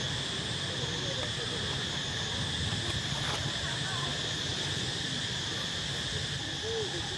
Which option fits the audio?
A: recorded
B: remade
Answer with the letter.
A